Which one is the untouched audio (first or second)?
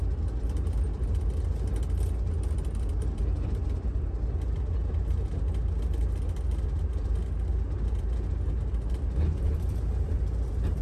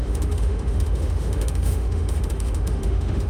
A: first